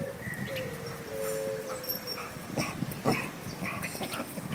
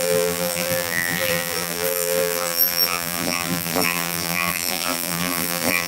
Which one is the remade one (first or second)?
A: second